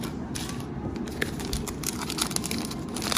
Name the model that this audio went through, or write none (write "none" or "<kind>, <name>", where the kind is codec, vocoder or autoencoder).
none